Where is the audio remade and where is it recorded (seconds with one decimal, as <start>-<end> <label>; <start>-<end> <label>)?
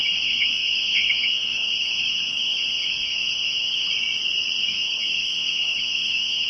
0.0-3.9 remade; 3.9-4.7 recorded; 4.7-6.5 remade